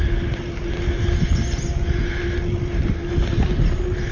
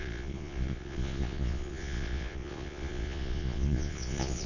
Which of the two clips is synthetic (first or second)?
second